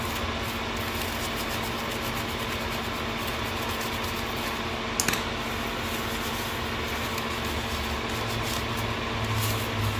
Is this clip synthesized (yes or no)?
no